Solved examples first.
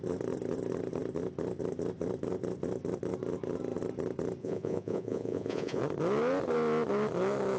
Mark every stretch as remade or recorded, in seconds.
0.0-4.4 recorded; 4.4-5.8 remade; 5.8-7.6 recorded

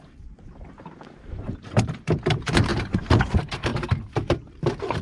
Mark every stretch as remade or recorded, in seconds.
0.0-5.0 remade

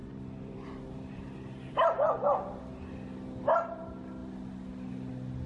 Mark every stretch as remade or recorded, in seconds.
0.0-2.6 remade; 2.6-5.5 recorded

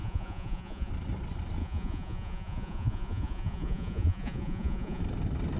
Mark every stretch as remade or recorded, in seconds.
0.0-0.9 remade; 0.9-1.6 recorded; 1.6-5.0 remade; 5.0-5.6 recorded

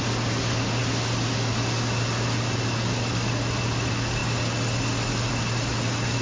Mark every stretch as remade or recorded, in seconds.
0.0-6.2 recorded

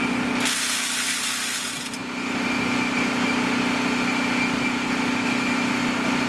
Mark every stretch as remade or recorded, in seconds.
0.0-6.3 recorded